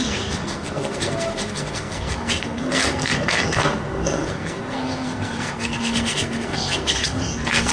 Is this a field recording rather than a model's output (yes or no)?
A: no